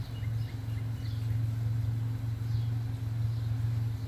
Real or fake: real